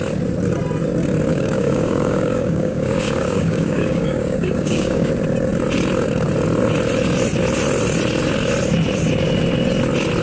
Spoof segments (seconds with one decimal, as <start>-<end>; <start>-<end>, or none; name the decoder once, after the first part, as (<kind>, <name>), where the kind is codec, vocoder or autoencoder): 1.3-5.1 (codec, DAC)